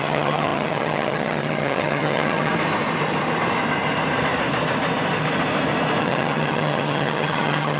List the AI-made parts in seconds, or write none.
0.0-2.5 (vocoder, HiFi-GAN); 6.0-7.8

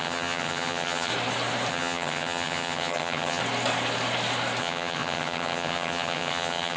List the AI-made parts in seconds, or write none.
0.0-1.1 (vocoder, HiFi-GAN); 1.7-3.4; 4.6-6.8

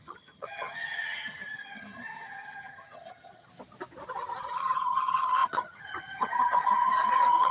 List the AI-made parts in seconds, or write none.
0.0-3.5 (vocoder, HiFi-GAN); 4.5-7.5

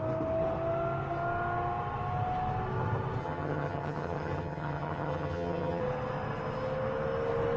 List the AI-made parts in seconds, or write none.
3.2-5.8 (vocoder, HiFi-GAN)

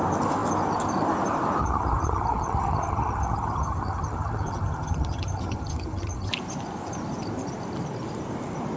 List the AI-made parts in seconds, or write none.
1.6-6.3 (vocoder, HiFi-GAN)

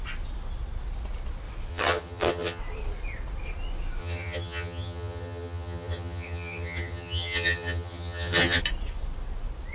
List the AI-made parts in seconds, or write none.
1.7-2.6 (vocoder, HiFi-GAN); 4.0-8.6

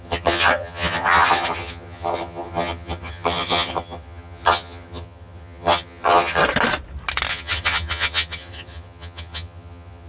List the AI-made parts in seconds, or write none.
0.0-6.4 (vocoder, HiFi-GAN); 7.3-10.1